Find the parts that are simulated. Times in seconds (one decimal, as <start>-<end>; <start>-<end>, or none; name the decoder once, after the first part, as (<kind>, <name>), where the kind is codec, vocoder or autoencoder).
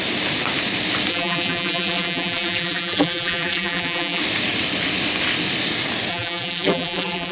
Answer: 1.1-4.2 (vocoder, BigVGAN v2); 6.1-7.3